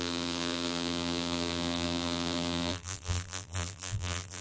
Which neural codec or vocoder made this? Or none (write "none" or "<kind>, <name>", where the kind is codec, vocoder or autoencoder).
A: vocoder, BigVGAN v2